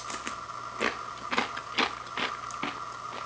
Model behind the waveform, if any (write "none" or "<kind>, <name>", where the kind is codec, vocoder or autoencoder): none